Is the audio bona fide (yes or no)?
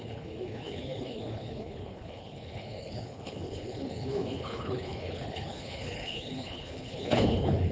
no